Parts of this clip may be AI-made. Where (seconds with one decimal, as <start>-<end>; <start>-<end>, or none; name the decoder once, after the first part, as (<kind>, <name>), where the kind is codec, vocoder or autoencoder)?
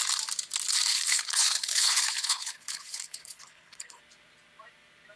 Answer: 0.9-4.0 (codec, HILCodec)